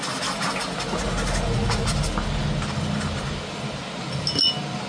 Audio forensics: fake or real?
real